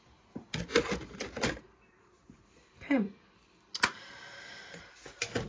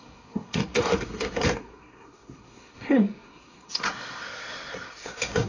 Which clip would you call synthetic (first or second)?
second